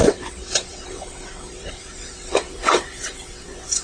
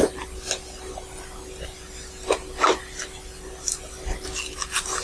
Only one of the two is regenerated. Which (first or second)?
first